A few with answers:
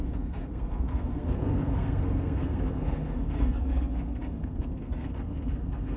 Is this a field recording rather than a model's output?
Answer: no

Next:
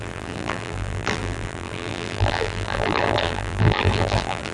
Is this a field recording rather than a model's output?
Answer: no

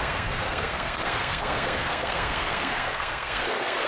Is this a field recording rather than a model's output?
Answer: no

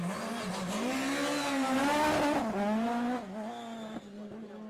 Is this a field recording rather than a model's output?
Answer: yes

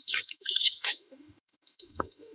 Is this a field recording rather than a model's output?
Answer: no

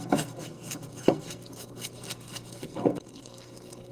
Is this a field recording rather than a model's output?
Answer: no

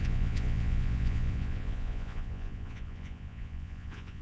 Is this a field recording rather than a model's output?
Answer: no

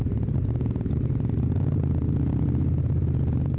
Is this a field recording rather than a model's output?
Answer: yes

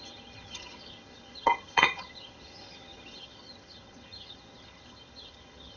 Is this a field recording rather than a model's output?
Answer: no